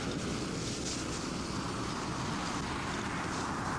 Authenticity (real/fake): real